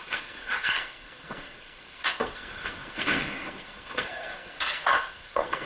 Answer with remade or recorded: remade